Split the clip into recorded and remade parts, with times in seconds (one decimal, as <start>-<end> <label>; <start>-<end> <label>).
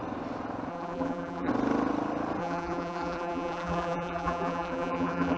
0.0-0.7 recorded; 0.7-1.5 remade; 1.5-2.4 recorded; 2.4-5.4 remade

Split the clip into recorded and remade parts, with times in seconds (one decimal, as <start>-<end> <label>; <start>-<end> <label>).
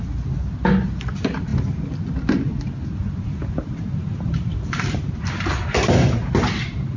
0.0-3.4 recorded; 3.4-6.3 remade; 6.3-7.0 recorded